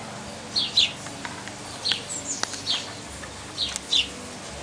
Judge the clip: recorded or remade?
recorded